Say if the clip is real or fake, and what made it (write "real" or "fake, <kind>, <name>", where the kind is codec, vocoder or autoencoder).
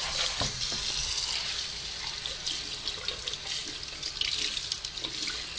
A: real